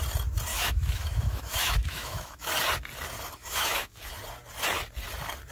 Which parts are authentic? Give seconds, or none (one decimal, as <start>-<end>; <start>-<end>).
0.0-0.5; 2.5-3.4; 4.1-5.5